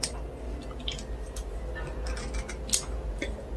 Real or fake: real